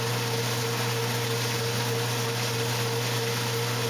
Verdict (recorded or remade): recorded